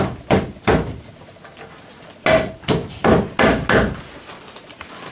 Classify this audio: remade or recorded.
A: recorded